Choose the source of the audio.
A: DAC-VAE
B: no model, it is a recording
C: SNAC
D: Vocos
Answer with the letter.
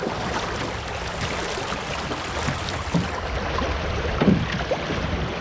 B